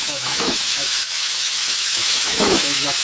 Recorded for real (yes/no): no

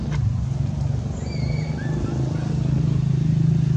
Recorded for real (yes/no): yes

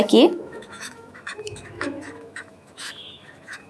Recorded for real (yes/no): no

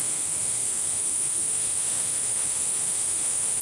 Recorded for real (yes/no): no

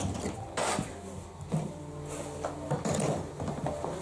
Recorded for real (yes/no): yes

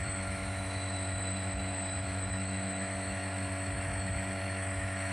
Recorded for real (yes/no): no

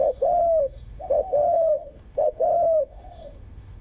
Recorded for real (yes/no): no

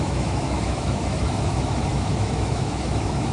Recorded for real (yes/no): no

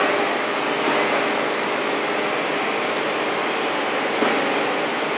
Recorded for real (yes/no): yes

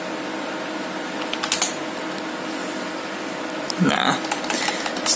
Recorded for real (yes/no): yes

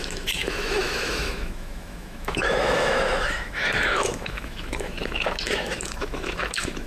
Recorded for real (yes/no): no